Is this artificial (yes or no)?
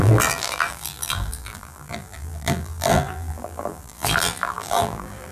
yes